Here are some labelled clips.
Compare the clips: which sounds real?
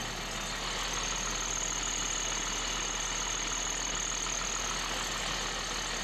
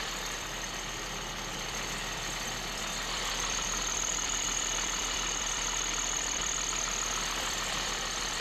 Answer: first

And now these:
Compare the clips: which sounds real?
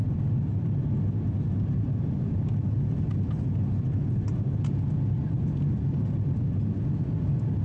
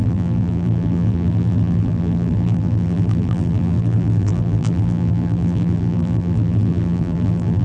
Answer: first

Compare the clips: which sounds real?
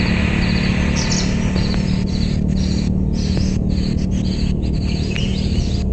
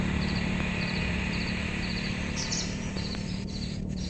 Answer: first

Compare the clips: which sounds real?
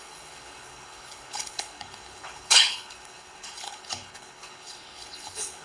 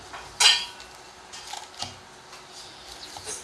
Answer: second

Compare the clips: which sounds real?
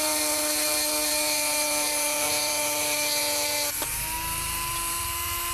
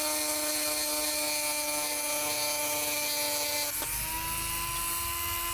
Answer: second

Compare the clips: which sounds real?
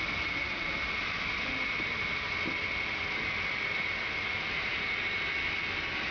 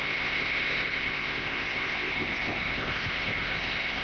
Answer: first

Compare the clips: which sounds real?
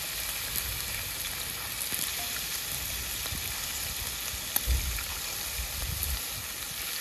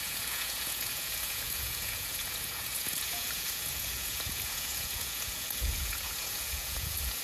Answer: first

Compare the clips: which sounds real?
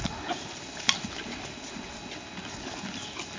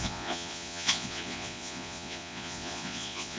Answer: first